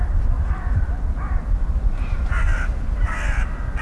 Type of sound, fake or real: real